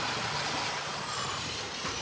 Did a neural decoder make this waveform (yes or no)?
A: no